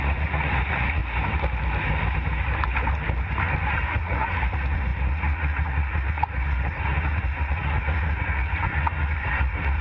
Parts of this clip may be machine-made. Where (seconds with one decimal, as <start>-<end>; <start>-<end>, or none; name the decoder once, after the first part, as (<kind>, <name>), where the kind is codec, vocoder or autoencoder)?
0.0-1.0 (vocoder, Vocos); 3.7-9.8